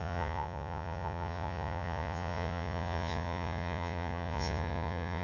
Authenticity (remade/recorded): remade